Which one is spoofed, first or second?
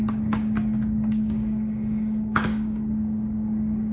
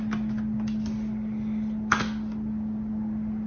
first